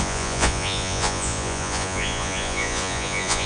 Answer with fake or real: fake